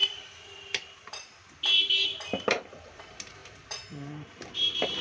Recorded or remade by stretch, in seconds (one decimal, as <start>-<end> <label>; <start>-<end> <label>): 0.0-3.0 remade; 3.0-3.4 recorded; 3.4-5.0 remade